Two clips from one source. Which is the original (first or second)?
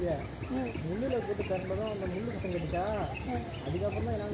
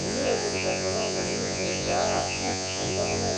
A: first